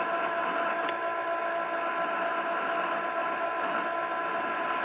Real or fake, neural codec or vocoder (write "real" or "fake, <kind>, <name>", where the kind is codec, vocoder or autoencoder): real